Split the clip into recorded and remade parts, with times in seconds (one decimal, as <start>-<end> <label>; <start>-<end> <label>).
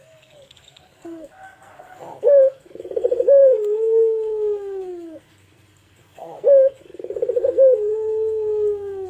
0.0-9.1 remade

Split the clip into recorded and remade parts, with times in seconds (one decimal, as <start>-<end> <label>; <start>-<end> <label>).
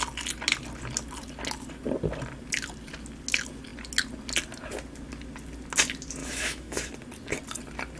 0.0-6.2 recorded; 6.2-6.9 remade; 6.9-8.0 recorded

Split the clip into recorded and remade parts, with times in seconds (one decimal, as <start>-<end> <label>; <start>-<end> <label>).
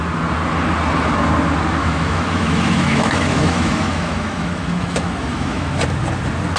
0.0-1.8 recorded; 1.8-5.8 remade; 5.8-6.6 recorded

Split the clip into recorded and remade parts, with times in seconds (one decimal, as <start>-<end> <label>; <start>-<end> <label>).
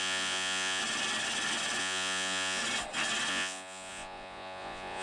0.0-0.8 remade; 0.8-1.8 recorded; 1.8-2.6 remade; 2.6-3.3 recorded; 3.3-5.0 remade